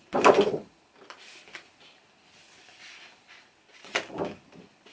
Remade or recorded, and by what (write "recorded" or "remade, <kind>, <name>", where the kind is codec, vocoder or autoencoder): recorded